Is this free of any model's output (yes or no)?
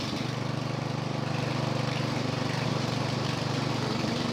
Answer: no